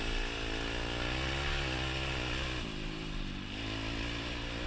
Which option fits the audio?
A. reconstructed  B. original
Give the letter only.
B